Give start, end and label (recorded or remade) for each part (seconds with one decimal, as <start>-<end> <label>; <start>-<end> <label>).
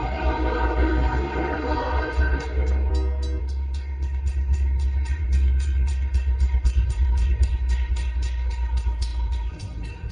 0.0-2.9 remade; 2.9-3.4 recorded; 3.4-10.1 remade